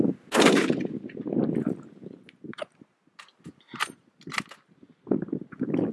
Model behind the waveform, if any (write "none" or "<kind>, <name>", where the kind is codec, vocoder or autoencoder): none